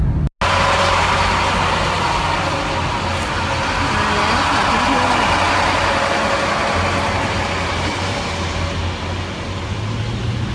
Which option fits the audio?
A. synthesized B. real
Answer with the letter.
B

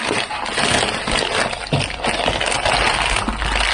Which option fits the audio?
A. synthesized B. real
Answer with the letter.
B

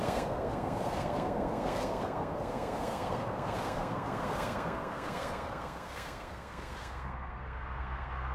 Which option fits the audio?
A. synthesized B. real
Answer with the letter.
A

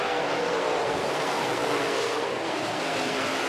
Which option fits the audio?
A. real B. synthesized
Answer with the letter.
B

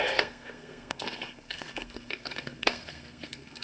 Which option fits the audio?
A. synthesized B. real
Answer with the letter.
A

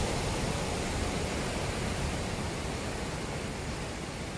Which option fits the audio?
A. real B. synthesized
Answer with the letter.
A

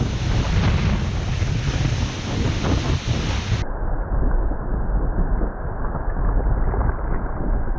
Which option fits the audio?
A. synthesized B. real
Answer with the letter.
B